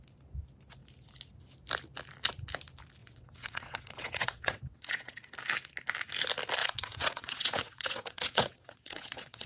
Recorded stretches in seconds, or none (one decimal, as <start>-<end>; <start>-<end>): 0.0-3.0; 5.2-6.6